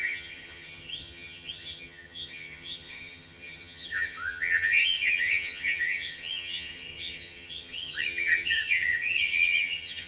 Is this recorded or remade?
remade